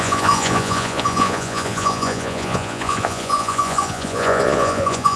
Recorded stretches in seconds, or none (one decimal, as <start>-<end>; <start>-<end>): none